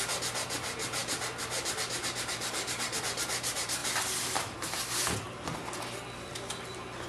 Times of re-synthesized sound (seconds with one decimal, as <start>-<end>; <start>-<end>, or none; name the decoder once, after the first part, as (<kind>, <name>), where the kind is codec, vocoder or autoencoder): 1.0-3.0 (vocoder, BigVGAN v2)